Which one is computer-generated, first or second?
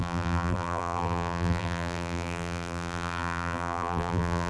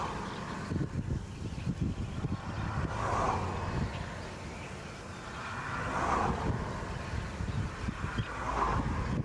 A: first